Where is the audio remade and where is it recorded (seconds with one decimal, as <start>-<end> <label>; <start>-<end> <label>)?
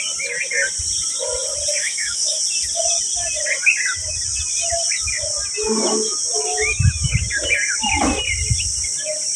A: 0.0-1.8 recorded; 1.8-2.4 remade; 2.4-9.4 recorded